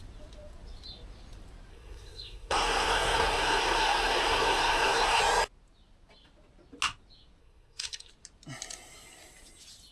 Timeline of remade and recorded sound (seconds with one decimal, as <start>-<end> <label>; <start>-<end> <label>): 0.0-1.7 recorded; 1.7-5.2 remade; 5.2-7.4 recorded; 7.4-8.1 remade; 8.1-9.9 recorded